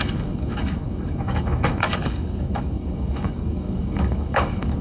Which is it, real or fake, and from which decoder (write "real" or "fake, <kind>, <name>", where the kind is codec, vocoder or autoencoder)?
fake, codec, DAC